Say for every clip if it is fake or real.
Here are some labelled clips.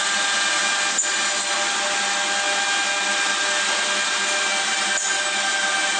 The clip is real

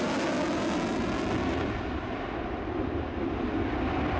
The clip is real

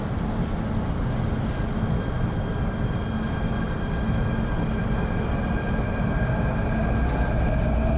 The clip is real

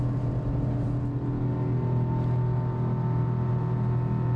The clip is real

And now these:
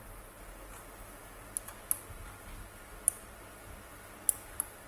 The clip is real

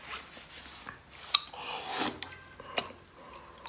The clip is real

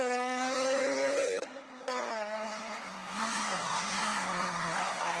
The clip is fake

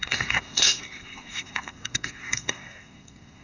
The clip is fake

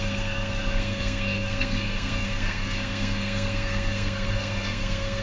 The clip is fake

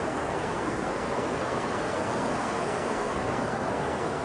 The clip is fake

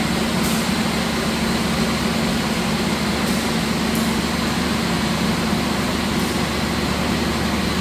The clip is real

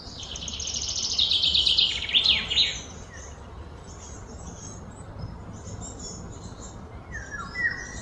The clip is real